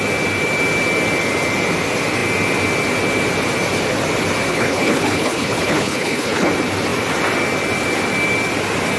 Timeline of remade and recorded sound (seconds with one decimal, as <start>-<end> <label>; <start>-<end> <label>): 0.0-4.5 recorded; 4.5-6.5 remade; 6.5-9.0 recorded